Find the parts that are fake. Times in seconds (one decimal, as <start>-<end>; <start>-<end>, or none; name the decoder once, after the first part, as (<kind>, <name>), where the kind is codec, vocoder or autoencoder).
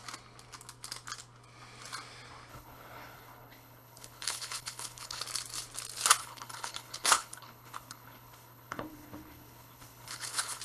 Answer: 2.5-5.2 (codec, HILCodec); 6.2-10.6